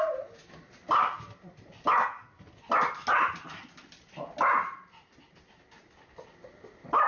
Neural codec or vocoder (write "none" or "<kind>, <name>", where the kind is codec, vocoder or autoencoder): none